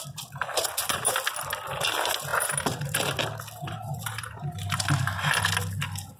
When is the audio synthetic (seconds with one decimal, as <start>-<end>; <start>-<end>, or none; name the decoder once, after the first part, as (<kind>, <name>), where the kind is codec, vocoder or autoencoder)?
none